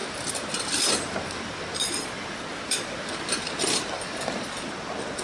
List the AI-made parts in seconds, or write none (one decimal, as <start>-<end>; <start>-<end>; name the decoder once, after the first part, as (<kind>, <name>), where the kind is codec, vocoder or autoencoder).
none